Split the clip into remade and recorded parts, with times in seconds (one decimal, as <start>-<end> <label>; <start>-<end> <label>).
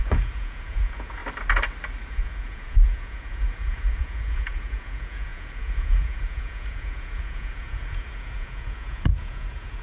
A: 0.0-1.2 remade; 1.2-2.1 recorded; 2.1-9.8 remade